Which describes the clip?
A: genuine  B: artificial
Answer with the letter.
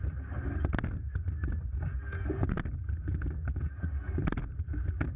A